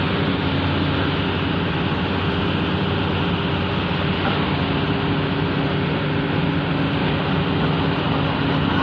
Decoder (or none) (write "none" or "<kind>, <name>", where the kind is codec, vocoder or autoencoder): none